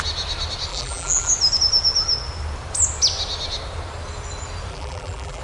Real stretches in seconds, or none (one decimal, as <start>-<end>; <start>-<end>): 0.0-0.7; 1.3-4.7